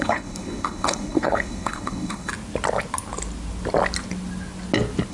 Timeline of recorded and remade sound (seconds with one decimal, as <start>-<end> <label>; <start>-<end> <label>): 0.0-2.3 remade; 2.3-5.1 recorded